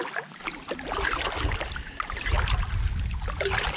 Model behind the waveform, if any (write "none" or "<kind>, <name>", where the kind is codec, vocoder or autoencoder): none